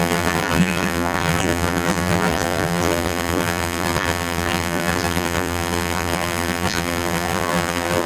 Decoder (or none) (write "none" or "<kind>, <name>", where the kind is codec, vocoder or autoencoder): vocoder, BigVGAN v2